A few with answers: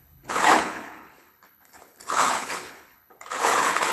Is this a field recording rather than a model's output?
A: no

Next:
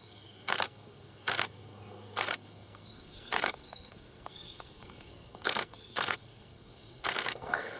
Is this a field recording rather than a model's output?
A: no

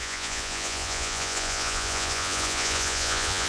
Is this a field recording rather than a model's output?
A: no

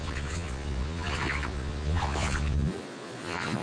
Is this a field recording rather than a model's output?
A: no